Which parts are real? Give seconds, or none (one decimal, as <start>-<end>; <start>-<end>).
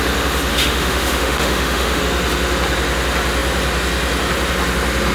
0.0-0.5; 2.0-5.1